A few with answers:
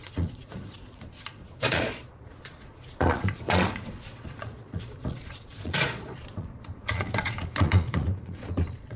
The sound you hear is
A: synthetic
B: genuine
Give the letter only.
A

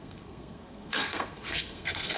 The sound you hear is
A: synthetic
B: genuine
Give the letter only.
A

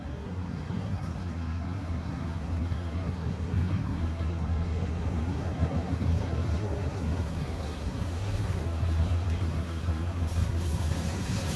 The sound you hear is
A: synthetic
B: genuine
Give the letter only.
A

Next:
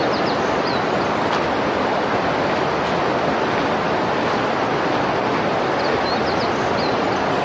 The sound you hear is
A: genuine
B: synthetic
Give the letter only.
A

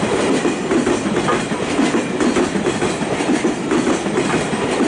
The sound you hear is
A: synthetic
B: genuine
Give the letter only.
B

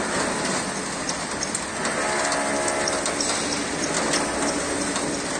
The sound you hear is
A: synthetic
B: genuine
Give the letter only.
B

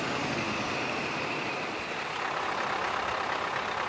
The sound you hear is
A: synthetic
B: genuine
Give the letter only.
B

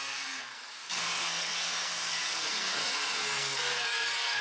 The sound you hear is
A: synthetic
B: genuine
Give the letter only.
A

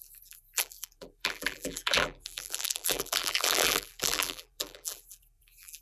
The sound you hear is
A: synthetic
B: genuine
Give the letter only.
A